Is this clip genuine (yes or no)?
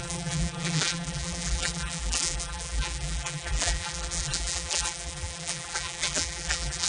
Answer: no